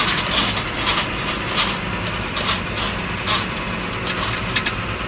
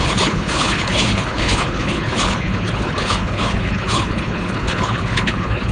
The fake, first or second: second